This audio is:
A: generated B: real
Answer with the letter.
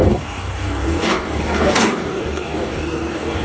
A